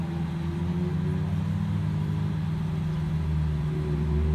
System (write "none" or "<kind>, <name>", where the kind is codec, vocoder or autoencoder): none